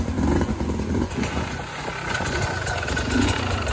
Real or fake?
fake